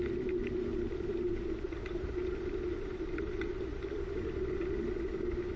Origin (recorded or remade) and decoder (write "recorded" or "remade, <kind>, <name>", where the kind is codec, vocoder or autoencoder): recorded